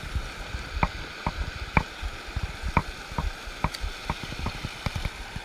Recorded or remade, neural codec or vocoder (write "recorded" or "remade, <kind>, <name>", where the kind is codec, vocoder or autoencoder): recorded